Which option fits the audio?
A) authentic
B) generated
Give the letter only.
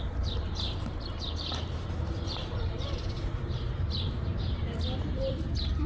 B